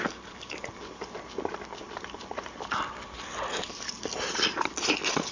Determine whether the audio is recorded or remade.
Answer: recorded